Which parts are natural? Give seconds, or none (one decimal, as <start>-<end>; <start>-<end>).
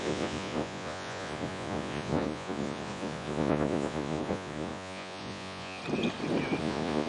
5.8-6.6